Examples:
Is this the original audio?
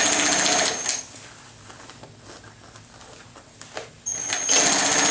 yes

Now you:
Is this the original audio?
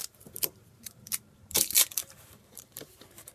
no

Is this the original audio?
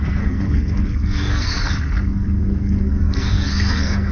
no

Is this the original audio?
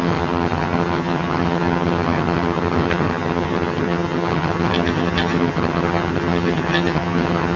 no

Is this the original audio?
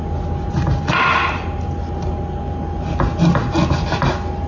yes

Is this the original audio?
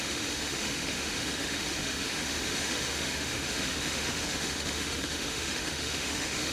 no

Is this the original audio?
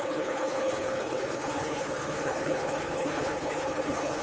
no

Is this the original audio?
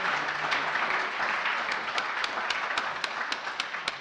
yes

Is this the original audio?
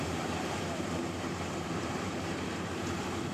no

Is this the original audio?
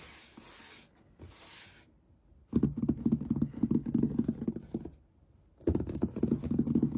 yes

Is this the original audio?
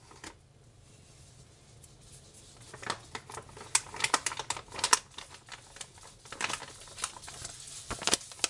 yes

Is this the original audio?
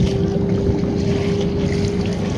yes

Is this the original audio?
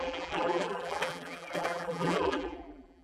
no